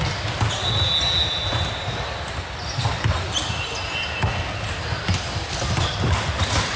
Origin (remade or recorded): recorded